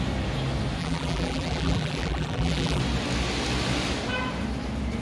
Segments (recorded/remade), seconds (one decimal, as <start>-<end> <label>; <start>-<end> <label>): 0.0-0.8 recorded; 0.8-2.8 remade; 2.8-5.0 recorded